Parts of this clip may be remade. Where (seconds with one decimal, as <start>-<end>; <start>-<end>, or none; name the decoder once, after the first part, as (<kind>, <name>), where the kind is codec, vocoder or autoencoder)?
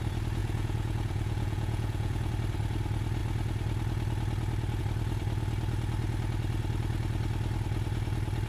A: 0.4-2.3 (vocoder, Vocos)